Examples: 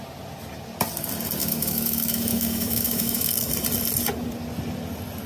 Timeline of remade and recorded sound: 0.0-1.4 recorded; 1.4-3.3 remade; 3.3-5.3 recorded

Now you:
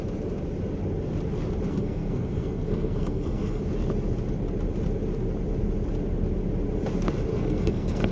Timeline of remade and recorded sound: 0.0-1.7 recorded; 1.7-3.6 remade; 3.6-7.3 recorded; 7.3-8.1 remade

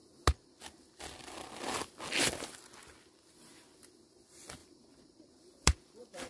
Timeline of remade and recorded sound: 0.0-4.6 recorded; 4.6-6.3 remade

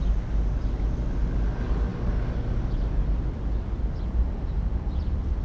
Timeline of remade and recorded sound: 0.0-5.4 recorded